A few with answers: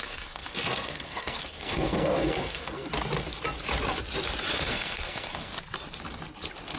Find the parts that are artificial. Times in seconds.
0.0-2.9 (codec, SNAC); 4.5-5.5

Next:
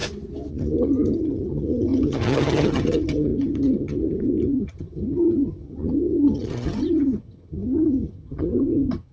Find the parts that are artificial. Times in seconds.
0.5-9.1 (vocoder, HiFi-GAN)

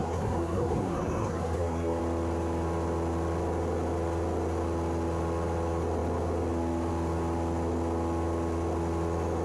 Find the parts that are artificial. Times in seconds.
0.0-2.0 (codec, SNAC)

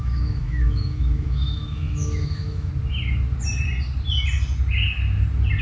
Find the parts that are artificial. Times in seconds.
0.0-2.7 (autoencoder, DAC-VAE)